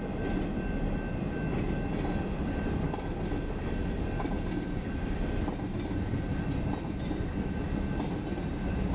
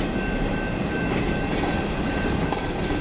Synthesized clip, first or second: second